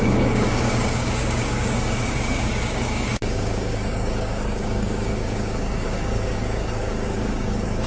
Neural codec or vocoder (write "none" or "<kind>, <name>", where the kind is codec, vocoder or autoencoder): codec, DAC